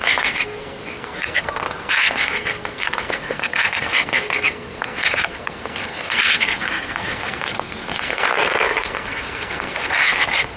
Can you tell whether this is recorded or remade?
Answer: remade